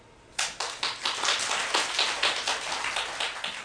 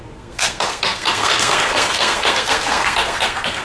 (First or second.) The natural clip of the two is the first